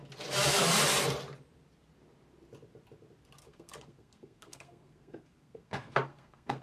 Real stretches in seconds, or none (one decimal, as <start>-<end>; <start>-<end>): 0.0-3.4